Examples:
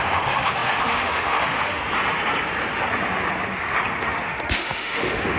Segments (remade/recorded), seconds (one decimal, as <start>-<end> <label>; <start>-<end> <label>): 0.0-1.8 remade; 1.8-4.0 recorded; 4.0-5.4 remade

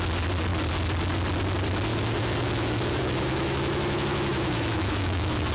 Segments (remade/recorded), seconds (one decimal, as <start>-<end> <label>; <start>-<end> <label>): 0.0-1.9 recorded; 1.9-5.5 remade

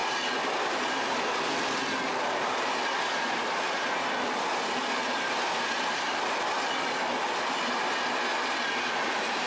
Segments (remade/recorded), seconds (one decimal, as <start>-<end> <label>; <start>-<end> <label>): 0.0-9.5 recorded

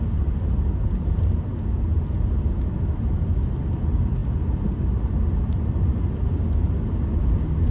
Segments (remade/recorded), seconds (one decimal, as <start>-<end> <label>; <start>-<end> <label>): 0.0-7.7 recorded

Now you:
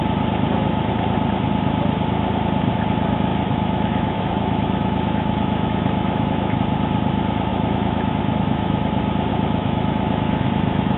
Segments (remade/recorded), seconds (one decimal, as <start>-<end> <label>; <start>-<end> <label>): 0.0-3.3 recorded; 3.3-6.6 remade; 6.6-7.5 recorded; 7.5-8.2 remade; 8.2-9.3 recorded; 9.3-11.0 remade

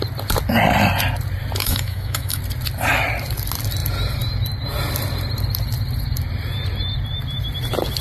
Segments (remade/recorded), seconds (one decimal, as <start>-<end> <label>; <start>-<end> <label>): 0.0-1.6 recorded; 1.6-2.4 remade; 2.4-8.0 recorded

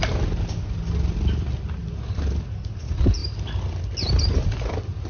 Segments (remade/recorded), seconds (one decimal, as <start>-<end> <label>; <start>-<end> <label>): 0.0-5.1 recorded